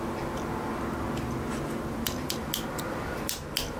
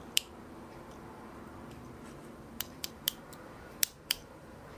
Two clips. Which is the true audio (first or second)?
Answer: first